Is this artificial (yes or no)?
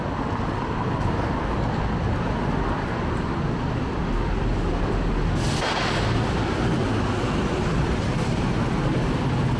no